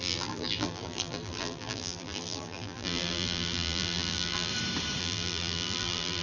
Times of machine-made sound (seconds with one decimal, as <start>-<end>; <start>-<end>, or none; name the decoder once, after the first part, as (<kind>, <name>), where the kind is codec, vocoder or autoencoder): 0.0-4.5 (vocoder, BigVGAN v2); 5.0-6.2